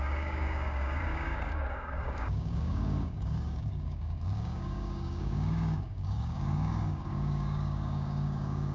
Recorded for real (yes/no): no